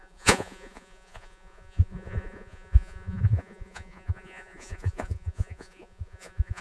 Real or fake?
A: fake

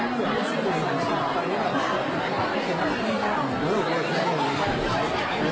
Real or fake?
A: real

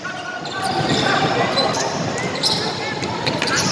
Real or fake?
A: real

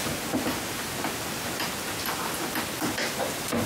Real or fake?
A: real